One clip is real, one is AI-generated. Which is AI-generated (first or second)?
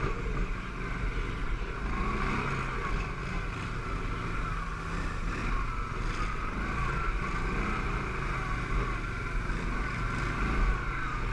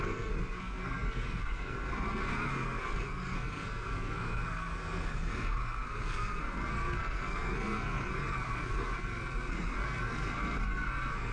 second